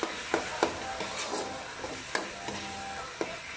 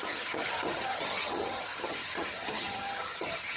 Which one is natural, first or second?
first